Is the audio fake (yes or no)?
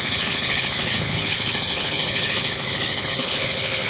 yes